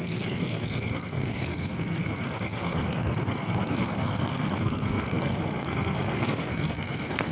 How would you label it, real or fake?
fake